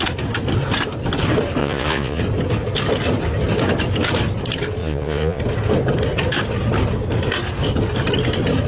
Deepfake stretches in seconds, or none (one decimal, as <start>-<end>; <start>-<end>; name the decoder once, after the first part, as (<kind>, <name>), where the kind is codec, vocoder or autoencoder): 1.6-2.2 (vocoder, Vocos); 4.8-5.4

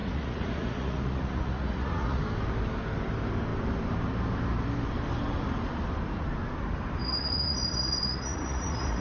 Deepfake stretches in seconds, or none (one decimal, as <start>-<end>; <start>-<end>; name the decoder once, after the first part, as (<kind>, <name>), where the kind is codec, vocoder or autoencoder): 0.0-2.2 (vocoder, Vocos); 7.0-9.0